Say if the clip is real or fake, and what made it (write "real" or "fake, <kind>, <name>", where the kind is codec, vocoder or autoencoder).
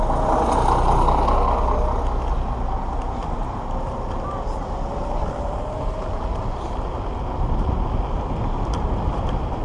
real